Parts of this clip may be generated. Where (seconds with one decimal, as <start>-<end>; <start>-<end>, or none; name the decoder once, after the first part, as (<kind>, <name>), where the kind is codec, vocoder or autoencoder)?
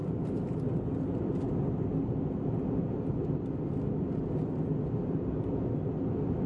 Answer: none